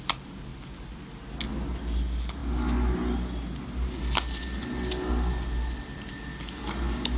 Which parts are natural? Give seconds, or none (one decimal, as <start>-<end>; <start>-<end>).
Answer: 0.0-7.2